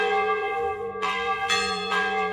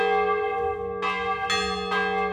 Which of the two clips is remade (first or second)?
first